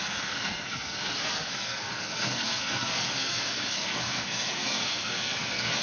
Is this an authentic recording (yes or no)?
no